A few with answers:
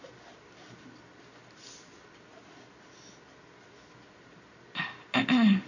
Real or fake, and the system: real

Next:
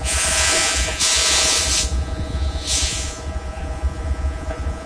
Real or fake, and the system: fake, vocoder, Vocos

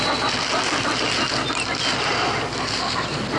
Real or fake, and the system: real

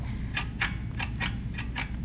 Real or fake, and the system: real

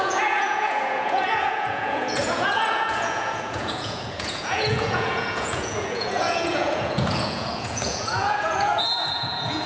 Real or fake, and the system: fake, vocoder, Vocos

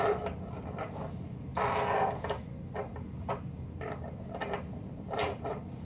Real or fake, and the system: real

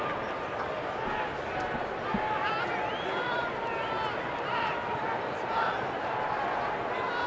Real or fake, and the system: real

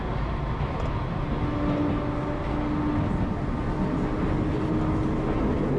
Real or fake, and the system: real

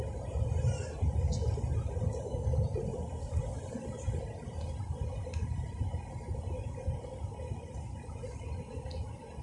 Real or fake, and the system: real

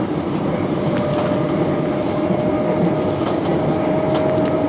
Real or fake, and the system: real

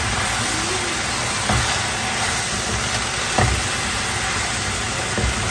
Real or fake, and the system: real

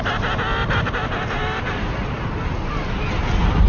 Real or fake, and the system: real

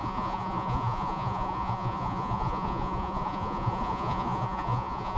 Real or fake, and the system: fake, vocoder, Vocos